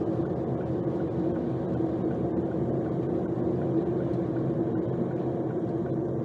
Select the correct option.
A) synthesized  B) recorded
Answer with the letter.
B